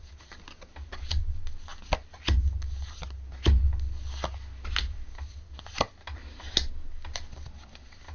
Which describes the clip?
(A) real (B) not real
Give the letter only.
A